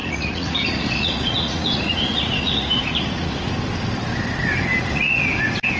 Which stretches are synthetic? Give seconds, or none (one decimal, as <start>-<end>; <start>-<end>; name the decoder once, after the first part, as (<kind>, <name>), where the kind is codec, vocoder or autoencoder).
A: 0.0-3.5 (vocoder, Vocos); 4.7-5.2